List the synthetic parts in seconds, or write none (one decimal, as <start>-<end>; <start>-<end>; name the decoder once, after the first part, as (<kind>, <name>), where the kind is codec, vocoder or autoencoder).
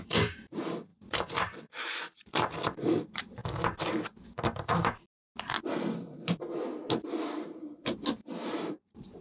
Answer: 0.0-3.4 (vocoder, BigVGAN v2); 8.6-9.2